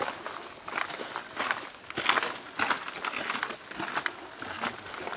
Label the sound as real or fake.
real